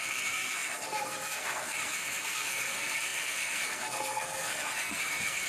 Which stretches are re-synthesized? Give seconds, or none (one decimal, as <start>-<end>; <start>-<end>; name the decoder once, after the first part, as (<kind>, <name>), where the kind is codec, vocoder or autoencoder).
0.0-5.5 (codec, SNAC)